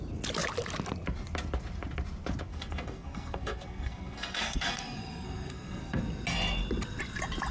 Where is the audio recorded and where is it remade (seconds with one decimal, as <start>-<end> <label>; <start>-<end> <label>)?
0.0-2.5 recorded; 2.5-6.0 remade; 6.0-7.5 recorded